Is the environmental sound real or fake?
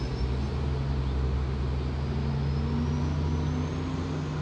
real